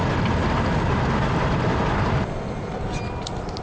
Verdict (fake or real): fake